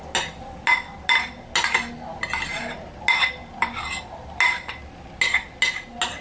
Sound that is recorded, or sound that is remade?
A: recorded